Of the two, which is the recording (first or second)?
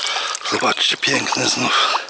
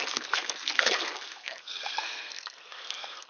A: first